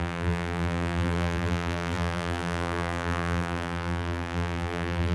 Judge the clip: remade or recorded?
remade